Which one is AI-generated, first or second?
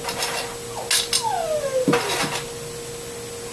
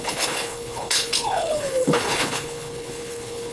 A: second